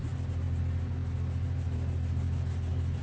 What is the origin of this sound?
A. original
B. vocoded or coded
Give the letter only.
A